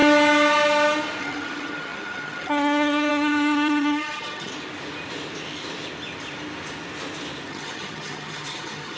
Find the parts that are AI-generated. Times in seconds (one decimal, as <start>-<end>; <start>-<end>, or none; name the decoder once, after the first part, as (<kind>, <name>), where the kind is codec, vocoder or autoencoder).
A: 1.2-4.5 (vocoder, HiFi-GAN); 7.5-9.0